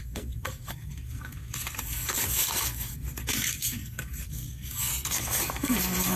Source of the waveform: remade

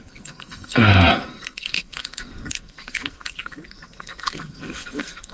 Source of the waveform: remade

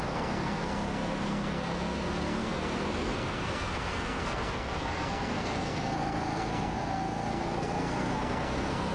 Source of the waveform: remade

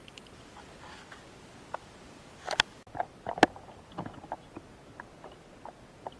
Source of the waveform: recorded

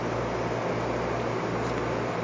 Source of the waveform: recorded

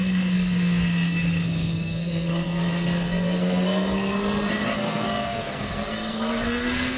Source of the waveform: remade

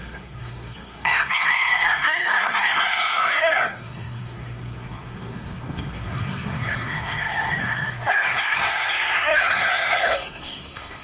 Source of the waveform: remade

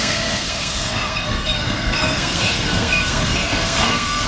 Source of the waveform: remade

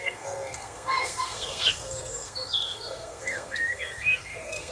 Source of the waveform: remade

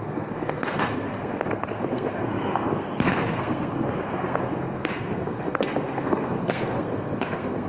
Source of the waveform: remade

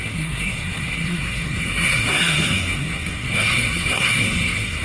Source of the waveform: remade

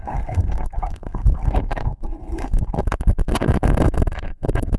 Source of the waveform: remade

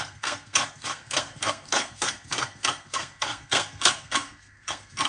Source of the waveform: remade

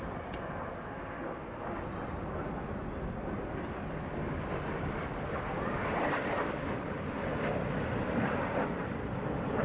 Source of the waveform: recorded